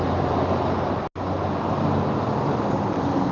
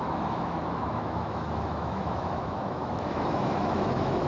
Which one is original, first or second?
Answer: first